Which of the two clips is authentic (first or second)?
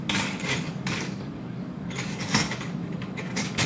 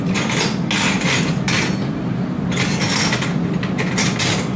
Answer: second